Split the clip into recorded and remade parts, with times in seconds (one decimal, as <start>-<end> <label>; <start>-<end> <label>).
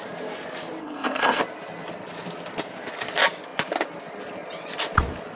0.0-0.8 recorded; 0.8-1.4 remade; 1.4-5.4 recorded